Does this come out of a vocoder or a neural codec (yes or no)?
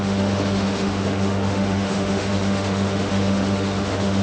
yes